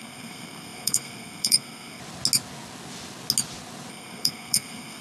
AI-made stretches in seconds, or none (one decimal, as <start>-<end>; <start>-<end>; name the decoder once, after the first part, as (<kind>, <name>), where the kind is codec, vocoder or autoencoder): 0.0-2.0 (codec, SNAC); 3.9-5.0